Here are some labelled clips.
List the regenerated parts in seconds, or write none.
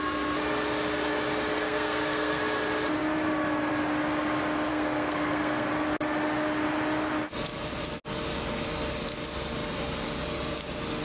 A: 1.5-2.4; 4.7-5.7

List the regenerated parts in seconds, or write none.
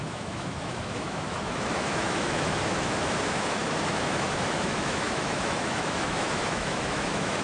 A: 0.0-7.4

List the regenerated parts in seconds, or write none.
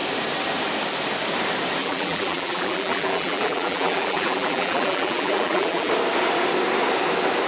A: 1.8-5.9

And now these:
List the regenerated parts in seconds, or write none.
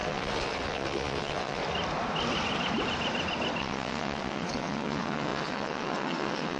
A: 0.0-1.6; 3.6-6.6